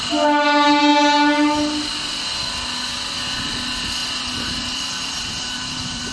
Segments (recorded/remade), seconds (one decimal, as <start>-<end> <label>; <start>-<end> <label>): 0.0-4.0 recorded; 4.0-6.1 remade